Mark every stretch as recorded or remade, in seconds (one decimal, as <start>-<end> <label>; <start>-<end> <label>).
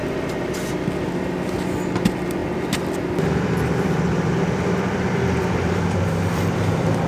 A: 0.0-7.1 remade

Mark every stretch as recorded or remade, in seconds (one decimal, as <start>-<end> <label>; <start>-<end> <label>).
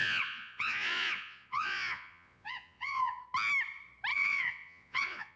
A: 0.0-3.2 remade; 3.2-4.1 recorded; 4.1-5.4 remade